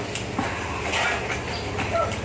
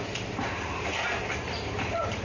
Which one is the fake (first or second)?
second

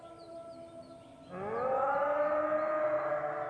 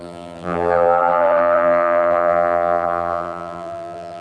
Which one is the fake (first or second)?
second